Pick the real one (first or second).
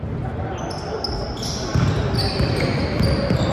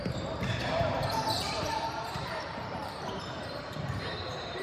first